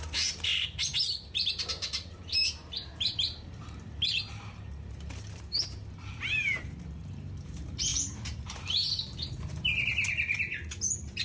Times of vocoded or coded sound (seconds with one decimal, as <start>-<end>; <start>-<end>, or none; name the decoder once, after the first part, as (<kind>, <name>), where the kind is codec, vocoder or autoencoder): 0.0-0.5 (vocoder, BigVGAN v2); 1.5-11.2